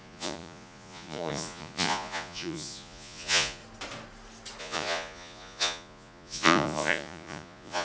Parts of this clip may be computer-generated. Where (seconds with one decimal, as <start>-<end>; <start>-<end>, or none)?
0.0-3.6; 4.6-7.8